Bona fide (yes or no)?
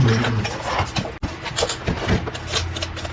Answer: yes